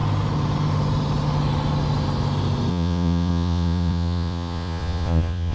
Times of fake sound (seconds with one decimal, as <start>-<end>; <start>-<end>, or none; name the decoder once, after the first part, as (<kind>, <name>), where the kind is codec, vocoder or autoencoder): 2.7-5.5 (vocoder, Vocos)